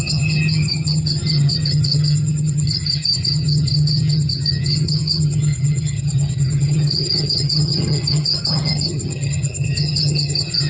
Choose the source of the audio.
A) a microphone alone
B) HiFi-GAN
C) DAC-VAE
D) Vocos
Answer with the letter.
B